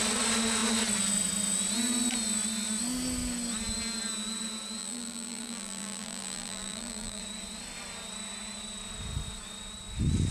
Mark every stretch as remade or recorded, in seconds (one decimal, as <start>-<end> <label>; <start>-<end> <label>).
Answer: 0.0-4.8 recorded; 4.8-7.2 remade; 7.2-10.3 recorded